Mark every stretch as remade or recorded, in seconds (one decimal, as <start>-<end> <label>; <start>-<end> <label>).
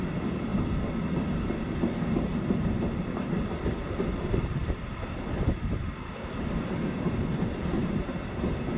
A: 0.0-0.5 remade; 0.5-2.6 recorded; 2.6-8.8 remade